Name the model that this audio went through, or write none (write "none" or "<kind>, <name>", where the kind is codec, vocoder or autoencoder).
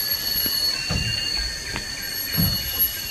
none